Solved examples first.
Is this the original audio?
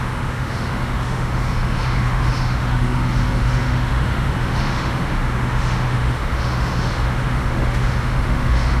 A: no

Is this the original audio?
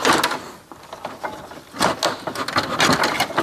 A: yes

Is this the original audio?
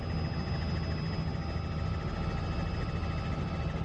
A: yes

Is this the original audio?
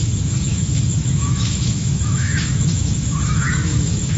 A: no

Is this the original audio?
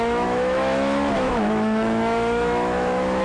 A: no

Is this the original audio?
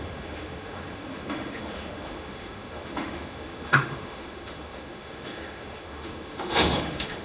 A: no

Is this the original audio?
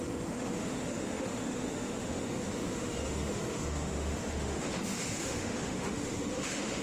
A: no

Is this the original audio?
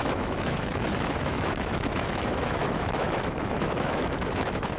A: no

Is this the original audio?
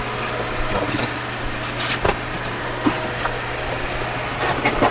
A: yes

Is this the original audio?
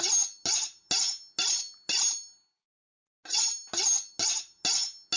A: yes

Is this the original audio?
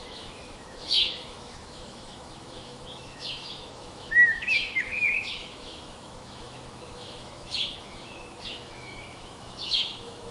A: no